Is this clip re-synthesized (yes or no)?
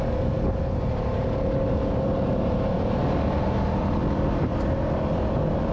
no